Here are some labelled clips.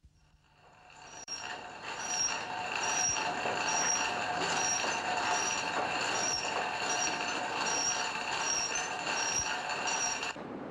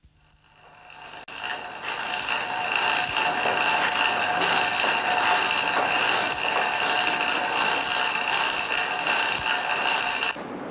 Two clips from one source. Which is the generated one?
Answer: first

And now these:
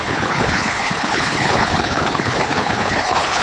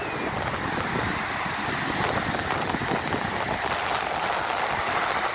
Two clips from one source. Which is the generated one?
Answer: first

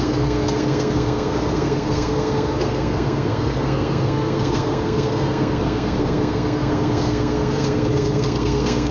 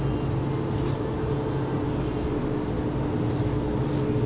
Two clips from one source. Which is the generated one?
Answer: first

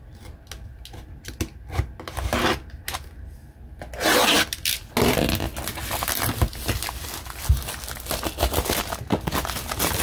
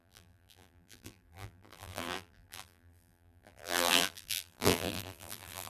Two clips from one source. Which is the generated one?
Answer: second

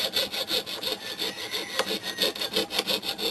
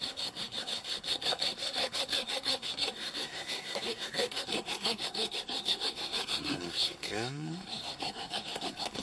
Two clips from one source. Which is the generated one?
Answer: second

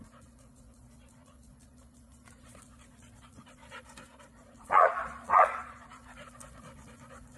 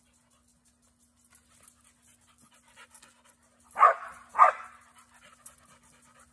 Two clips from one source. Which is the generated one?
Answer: first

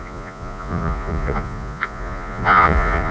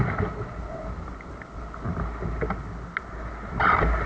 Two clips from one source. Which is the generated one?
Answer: first